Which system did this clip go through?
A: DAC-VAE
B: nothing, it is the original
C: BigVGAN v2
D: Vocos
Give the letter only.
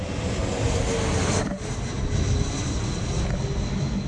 B